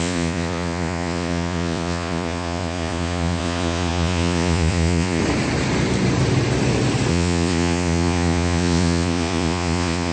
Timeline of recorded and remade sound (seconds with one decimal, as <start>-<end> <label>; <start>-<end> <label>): 0.0-5.2 remade; 5.2-7.1 recorded; 7.1-10.1 remade